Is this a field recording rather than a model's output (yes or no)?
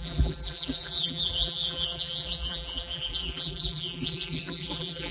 no